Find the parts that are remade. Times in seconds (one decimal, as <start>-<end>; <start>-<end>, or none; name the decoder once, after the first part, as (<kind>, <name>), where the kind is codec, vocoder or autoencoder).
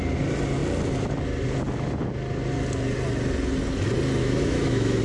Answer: 4.2-5.0 (autoencoder, DAC-VAE)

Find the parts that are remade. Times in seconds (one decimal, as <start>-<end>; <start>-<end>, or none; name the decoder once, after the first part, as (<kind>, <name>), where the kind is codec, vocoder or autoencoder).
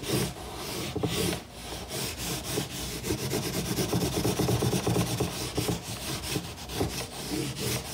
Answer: 0.0-7.9 (vocoder, BigVGAN v2)